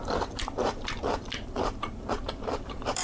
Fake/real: fake